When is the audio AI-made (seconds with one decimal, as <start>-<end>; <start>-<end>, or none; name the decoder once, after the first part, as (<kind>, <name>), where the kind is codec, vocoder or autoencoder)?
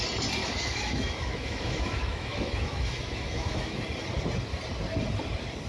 0.4-3.8 (autoencoder, DAC-VAE)